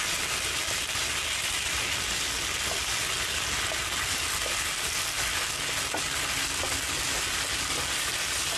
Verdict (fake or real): real